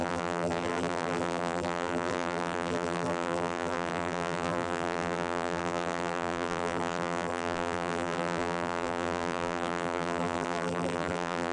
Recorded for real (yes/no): no